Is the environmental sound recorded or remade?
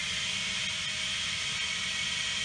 recorded